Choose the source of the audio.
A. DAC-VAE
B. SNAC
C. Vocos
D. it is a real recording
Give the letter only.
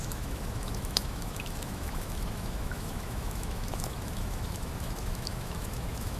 A